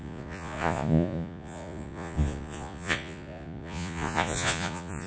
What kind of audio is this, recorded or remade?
remade